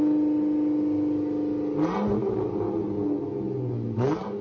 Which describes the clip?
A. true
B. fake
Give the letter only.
A